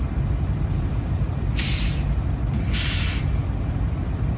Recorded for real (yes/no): yes